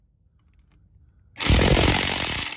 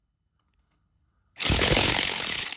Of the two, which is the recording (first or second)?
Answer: first